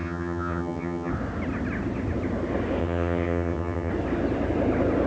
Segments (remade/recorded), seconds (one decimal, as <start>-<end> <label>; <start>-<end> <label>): 0.0-1.1 remade; 1.1-2.8 recorded; 2.8-3.9 remade; 3.9-5.1 recorded